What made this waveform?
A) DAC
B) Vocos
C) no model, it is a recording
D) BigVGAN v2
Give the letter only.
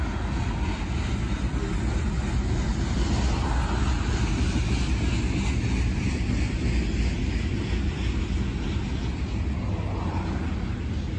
C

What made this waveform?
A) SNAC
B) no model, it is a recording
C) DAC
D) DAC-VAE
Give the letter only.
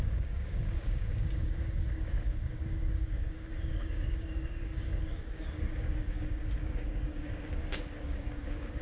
C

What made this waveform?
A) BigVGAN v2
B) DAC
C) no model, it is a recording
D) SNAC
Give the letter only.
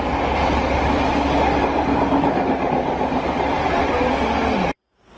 C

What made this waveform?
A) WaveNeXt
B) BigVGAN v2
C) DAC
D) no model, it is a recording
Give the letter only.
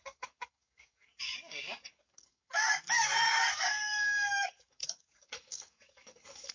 C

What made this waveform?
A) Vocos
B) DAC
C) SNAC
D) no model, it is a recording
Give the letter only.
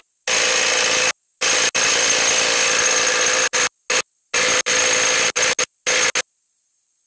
D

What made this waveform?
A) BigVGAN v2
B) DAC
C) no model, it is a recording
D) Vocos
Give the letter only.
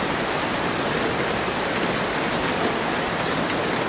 C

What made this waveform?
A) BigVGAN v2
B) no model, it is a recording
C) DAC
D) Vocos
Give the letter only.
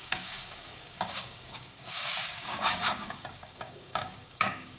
C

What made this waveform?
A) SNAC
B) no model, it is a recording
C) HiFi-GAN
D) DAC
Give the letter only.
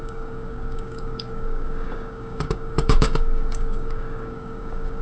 D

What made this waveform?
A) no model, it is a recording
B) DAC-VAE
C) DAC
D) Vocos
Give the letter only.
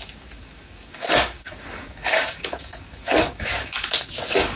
C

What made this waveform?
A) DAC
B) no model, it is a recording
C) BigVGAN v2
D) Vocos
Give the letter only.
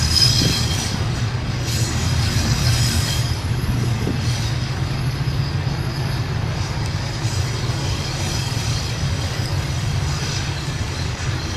A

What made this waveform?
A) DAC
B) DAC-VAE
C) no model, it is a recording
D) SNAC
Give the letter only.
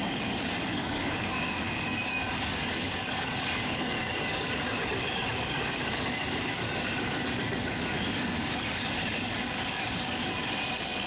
A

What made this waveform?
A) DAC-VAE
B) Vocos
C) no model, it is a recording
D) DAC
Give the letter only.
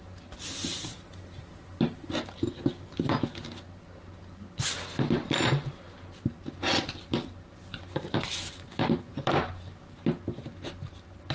C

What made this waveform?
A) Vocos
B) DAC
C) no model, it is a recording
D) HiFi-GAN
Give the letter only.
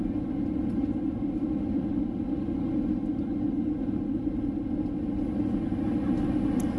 C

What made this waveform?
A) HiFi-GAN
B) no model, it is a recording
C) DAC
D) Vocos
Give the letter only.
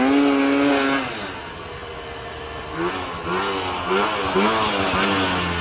B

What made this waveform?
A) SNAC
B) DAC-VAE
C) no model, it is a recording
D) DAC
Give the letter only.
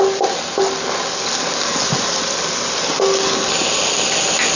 C